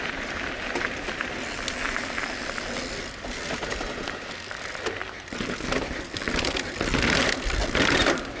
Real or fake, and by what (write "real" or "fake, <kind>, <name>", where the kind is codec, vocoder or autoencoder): real